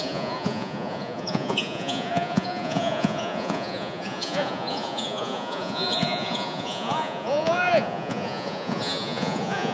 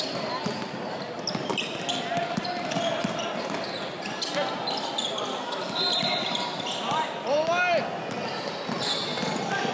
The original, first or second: second